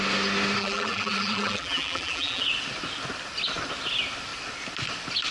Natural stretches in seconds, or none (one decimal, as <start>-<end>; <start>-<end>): 0.0-0.6; 2.4-5.3